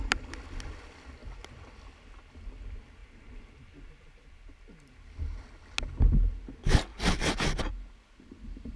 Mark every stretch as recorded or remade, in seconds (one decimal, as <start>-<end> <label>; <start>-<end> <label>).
0.0-3.0 recorded; 3.0-5.4 remade; 5.4-6.9 recorded; 6.9-7.6 remade; 7.6-8.8 recorded